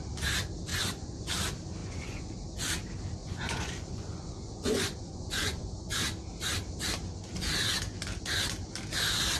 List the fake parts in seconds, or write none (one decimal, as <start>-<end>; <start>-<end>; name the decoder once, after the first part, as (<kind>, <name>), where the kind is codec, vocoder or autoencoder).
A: 0.7-1.3 (vocoder, Vocos); 1.8-2.3; 3.2-5.9